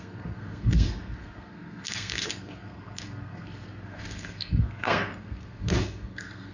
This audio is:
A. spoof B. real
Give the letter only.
A